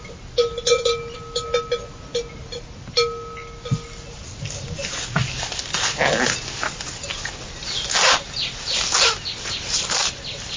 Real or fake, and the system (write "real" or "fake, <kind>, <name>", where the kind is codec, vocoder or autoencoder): real